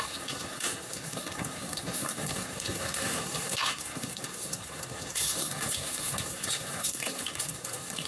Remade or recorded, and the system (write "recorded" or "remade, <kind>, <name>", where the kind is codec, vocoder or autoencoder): remade, codec, SNAC